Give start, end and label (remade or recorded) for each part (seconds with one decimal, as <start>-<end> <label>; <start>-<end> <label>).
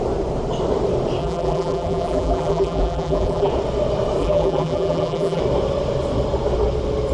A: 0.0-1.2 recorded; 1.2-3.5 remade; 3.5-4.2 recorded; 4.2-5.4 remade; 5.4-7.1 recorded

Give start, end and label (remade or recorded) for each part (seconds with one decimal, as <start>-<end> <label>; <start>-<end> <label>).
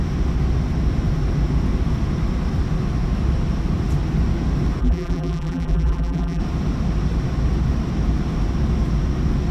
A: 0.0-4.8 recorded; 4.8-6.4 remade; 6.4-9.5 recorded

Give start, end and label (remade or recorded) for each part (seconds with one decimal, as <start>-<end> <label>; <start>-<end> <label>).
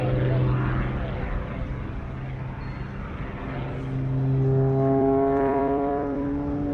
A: 0.0-5.0 recorded; 5.0-6.7 remade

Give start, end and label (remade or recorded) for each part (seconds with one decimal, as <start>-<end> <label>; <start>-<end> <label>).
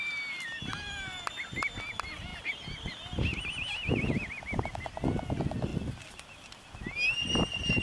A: 0.0-2.3 recorded; 2.3-2.9 remade; 2.9-3.3 recorded; 3.3-4.7 remade; 4.7-5.7 recorded; 5.7-6.6 remade; 6.6-7.8 recorded